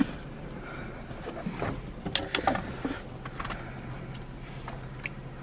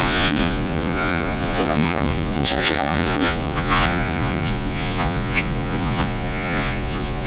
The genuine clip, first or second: first